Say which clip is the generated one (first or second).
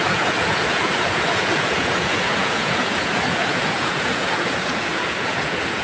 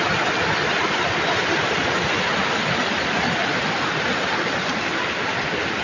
first